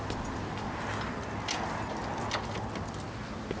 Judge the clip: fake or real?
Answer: real